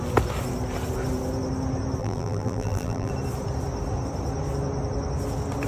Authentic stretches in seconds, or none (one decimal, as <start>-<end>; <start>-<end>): 0.0-2.0; 3.1-5.7